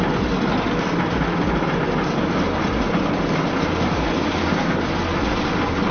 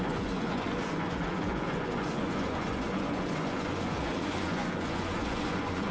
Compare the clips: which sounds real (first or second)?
first